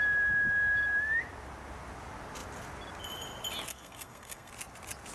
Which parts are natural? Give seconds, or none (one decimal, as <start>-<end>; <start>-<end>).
0.0-3.7; 4.5-5.1

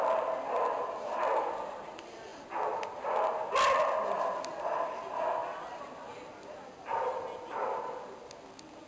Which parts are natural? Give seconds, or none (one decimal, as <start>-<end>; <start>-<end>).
0.0-8.9

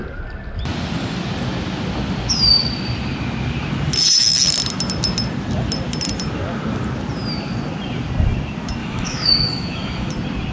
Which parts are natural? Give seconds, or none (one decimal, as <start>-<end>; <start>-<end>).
0.0-8.8; 10.1-10.5

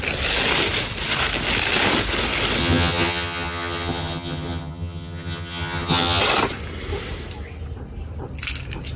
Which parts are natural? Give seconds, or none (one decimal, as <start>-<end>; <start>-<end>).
0.0-2.6; 6.2-9.0